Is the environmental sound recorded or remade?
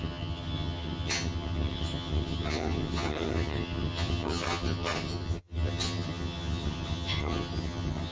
remade